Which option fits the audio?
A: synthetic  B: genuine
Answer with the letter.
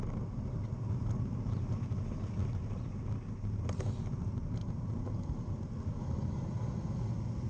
B